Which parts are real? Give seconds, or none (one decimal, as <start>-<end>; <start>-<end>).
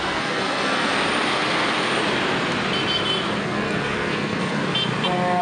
0.9-3.4; 4.6-5.4